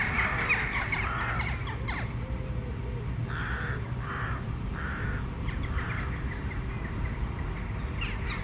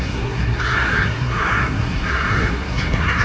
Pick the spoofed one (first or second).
second